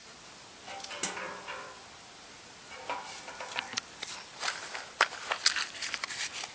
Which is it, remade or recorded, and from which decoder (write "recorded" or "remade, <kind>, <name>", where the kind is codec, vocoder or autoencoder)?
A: recorded